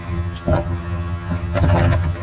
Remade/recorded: remade